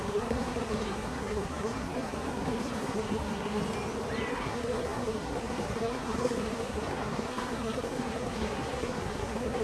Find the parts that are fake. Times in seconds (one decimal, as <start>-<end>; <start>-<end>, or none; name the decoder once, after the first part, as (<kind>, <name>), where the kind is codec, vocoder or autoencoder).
0.0-3.6 (codec, SNAC); 4.3-9.6